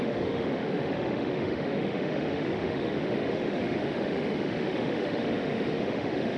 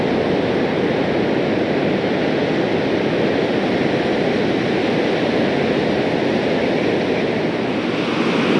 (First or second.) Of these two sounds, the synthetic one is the first